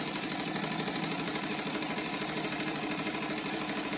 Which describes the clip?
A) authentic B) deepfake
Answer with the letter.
B